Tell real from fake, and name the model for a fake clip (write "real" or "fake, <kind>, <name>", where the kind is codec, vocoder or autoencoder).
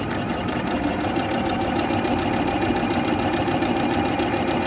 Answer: fake, vocoder, BigVGAN v2